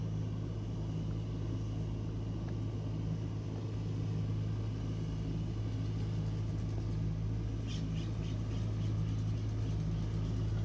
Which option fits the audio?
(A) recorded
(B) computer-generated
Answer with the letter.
A